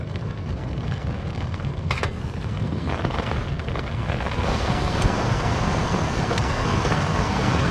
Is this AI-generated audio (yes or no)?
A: yes